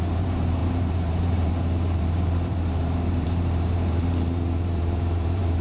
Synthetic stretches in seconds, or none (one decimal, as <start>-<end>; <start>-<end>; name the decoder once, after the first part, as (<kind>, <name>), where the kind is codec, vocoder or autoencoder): 0.0-5.6 (vocoder, BigVGAN v2)